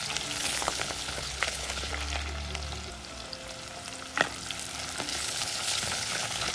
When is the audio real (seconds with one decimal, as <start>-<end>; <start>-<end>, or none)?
0.0-0.4; 1.9-5.1